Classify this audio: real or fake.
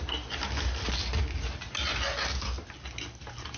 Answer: real